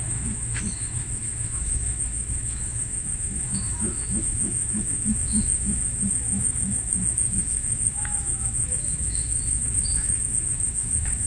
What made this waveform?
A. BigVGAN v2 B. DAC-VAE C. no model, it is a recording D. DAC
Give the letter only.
B